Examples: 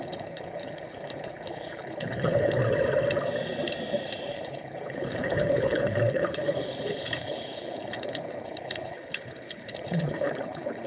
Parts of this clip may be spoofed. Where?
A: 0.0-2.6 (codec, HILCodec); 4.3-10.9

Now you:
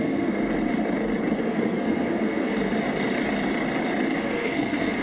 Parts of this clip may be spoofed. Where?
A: 0.0-0.4 (codec, SNAC); 1.4-2.5; 4.2-5.0

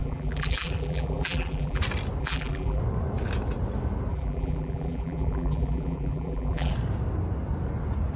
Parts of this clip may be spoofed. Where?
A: 0.0-1.8 (vocoder, BigVGAN v2); 2.2-2.8; 4.1-6.7

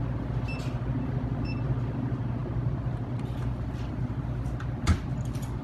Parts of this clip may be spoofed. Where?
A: none

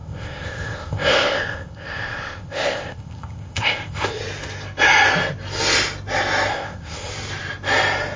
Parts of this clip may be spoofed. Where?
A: 0.0-4.2 (codec, ZipCodec); 6.5-7.1

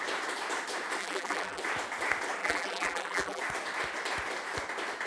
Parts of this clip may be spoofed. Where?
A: 1.0-1.6 (vocoder, BigVGAN v2); 2.4-3.4